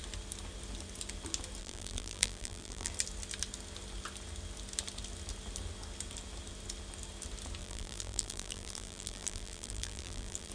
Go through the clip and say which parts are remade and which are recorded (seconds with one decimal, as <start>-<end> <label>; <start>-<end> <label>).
0.0-1.6 recorded; 1.6-2.9 remade; 2.9-7.6 recorded; 7.6-10.5 remade